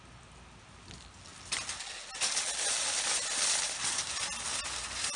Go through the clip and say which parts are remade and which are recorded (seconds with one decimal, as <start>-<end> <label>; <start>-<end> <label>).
0.0-5.2 recorded